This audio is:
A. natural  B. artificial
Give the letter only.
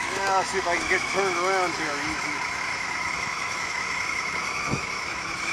B